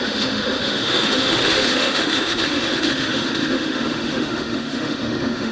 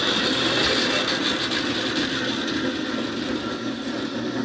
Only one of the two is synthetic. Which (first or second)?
first